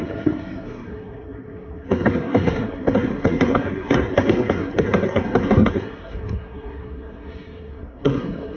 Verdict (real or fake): fake